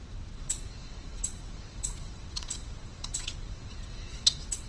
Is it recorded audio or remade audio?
remade